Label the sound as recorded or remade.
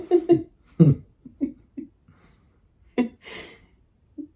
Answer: remade